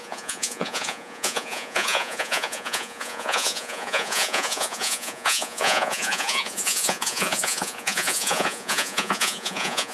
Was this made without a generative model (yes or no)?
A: no